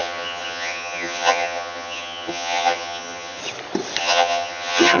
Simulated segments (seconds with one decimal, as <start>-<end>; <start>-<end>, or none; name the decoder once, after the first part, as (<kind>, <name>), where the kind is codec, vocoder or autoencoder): 0.0-3.4 (vocoder, HiFi-GAN); 4.0-5.0